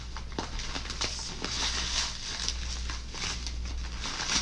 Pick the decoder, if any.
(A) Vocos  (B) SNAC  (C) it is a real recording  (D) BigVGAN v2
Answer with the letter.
C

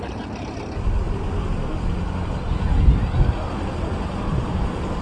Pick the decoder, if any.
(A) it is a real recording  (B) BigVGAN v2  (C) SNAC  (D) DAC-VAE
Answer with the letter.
A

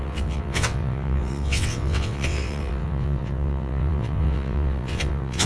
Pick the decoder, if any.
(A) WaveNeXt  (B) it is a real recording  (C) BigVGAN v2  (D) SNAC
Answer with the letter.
A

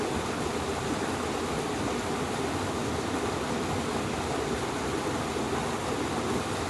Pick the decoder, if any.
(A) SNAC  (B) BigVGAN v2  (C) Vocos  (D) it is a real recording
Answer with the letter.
D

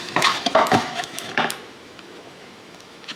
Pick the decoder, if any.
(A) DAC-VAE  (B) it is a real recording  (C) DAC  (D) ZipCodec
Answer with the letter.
A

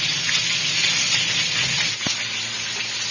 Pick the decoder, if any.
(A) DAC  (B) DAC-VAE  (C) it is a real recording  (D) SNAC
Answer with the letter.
C